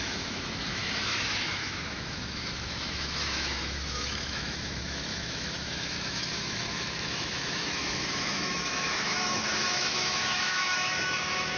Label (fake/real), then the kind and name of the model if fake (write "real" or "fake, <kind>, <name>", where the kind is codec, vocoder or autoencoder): fake, autoencoder, DAC-VAE